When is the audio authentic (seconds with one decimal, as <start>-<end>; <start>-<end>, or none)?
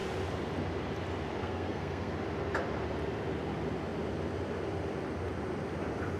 0.0-1.4; 2.1-6.2